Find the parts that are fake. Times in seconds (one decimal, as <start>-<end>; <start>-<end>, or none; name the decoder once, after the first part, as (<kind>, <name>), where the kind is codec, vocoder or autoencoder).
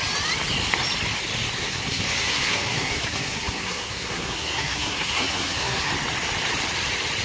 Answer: 1.6-5.9 (codec, SNAC)